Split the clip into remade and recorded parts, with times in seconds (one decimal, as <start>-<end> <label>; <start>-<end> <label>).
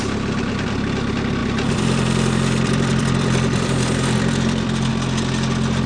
0.0-1.4 recorded; 1.4-4.9 remade; 4.9-5.9 recorded